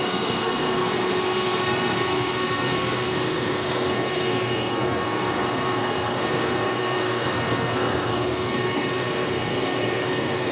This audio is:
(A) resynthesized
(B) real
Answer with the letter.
A